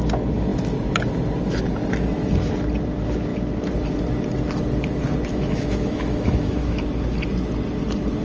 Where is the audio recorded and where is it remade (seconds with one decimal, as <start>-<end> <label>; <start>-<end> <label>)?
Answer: 0.0-5.3 recorded; 5.3-6.8 remade; 6.8-8.2 recorded